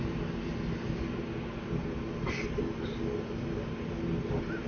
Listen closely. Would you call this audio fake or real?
real